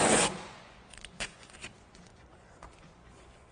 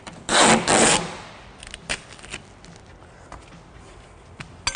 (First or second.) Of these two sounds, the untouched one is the second